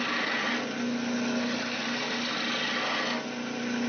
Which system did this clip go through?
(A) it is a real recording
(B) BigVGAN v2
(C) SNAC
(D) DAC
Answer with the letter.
A